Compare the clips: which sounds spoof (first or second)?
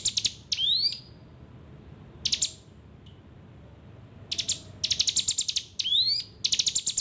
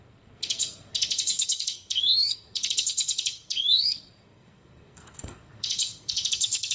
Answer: second